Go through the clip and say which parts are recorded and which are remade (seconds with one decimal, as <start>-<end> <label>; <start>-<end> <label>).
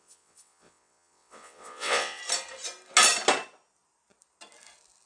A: 0.0-2.2 remade; 2.2-5.1 recorded